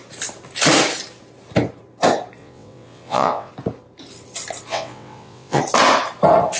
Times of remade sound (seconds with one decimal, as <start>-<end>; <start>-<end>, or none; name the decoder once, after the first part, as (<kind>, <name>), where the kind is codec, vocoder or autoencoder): 2.4-3.5 (vocoder, WaveNeXt); 4.7-5.6